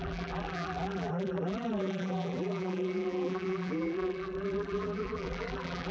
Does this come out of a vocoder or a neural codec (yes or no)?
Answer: yes